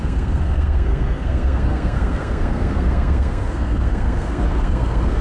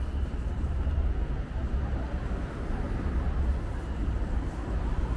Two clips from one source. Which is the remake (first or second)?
first